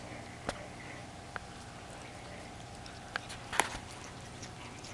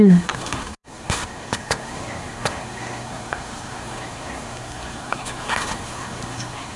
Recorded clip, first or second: first